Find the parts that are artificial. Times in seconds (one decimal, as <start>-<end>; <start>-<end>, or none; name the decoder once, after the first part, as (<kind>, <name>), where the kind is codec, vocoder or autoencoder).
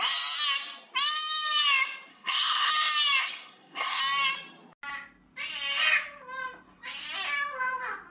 2.1-2.7 (codec, SNAC); 3.2-4.0